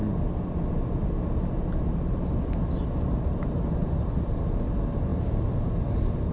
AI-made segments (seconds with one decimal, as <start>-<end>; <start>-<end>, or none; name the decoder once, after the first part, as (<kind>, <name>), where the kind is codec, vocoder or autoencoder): 3.8-4.4 (vocoder, BigVGAN v2); 5.1-6.3